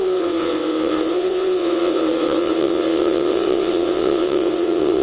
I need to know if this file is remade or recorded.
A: remade